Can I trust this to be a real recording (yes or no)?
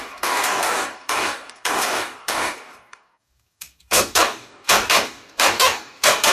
no